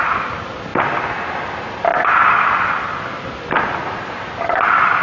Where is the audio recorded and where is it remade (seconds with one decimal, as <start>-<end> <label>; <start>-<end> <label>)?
0.0-5.0 recorded